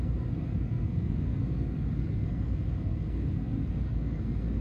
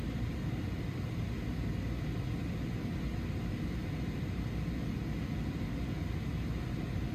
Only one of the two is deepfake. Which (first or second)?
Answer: first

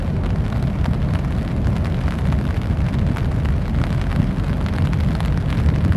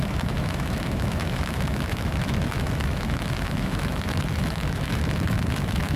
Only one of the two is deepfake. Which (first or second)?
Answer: second